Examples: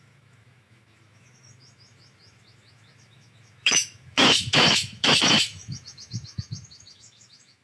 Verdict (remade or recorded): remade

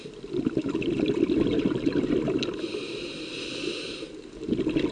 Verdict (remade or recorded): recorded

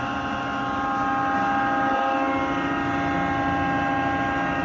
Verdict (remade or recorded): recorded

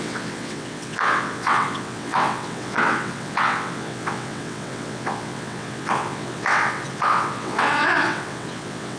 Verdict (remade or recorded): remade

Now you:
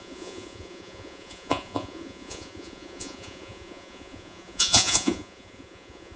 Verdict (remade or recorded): remade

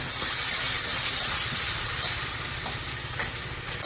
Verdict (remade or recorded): recorded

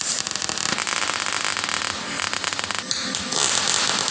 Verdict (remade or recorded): recorded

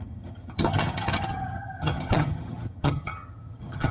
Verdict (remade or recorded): remade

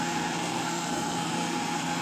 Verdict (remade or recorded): remade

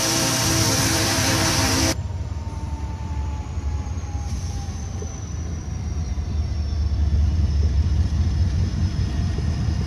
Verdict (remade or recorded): remade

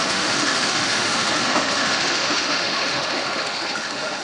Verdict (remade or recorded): remade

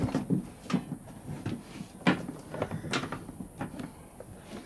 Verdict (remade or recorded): recorded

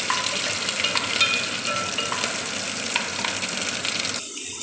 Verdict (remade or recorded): recorded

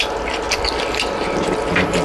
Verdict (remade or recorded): recorded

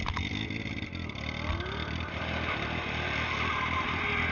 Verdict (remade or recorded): recorded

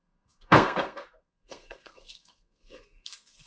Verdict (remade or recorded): remade